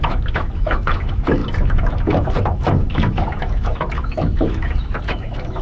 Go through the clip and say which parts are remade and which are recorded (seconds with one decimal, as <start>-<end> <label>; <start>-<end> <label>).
0.0-5.6 remade